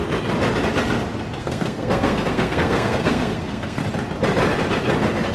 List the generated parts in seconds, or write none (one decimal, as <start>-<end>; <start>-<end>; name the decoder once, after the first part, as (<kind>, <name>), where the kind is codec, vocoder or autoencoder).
1.4-3.8 (codec, SNAC)